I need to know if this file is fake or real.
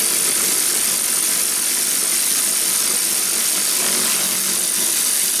real